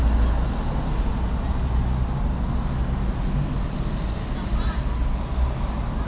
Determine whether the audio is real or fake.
real